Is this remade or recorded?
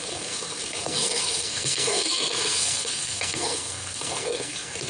remade